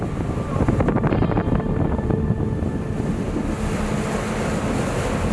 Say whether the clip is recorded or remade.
recorded